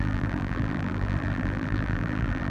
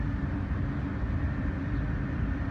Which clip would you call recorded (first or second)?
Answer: second